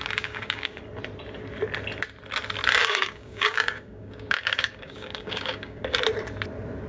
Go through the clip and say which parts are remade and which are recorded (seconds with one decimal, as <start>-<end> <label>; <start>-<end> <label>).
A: 0.0-0.8 remade; 0.8-2.8 recorded; 2.8-5.8 remade; 5.8-6.9 recorded